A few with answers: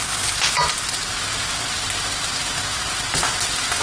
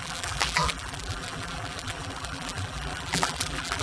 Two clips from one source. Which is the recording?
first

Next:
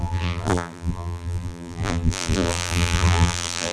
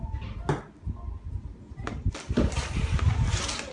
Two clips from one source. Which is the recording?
second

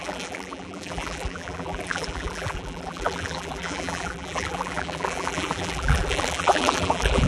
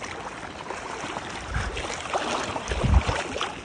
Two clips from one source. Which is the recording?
second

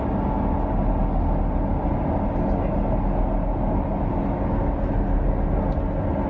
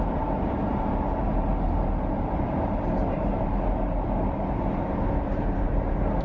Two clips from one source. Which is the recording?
first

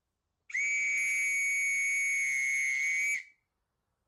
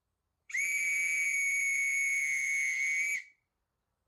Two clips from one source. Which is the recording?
first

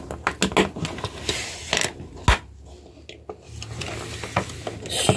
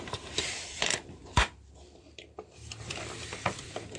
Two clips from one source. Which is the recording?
first